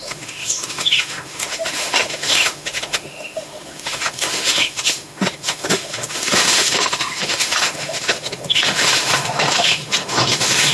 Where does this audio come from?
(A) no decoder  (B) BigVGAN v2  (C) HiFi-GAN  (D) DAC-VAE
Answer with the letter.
D